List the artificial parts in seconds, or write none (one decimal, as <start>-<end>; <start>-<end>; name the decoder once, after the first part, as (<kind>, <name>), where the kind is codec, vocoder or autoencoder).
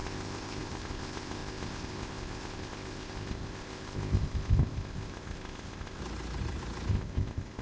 0.0-6.0 (codec, ZipCodec); 6.9-7.6